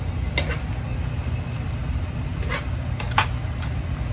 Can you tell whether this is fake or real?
real